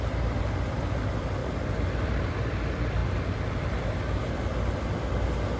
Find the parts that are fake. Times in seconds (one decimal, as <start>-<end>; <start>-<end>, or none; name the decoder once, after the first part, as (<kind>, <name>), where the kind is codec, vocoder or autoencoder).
1.4-2.2 (vocoder, BigVGAN v2); 3.0-3.6